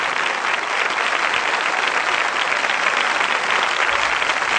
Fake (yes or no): no